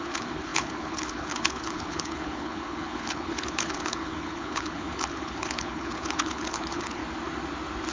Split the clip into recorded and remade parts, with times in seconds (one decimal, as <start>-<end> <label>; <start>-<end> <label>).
0.0-7.0 remade; 7.0-7.9 recorded